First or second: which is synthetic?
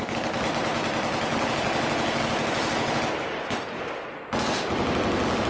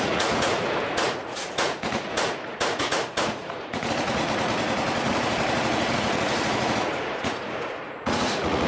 second